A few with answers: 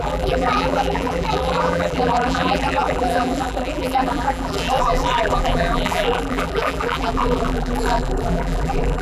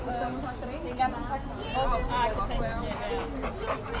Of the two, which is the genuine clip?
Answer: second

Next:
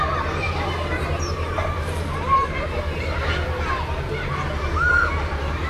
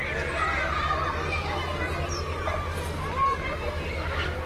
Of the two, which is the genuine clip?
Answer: second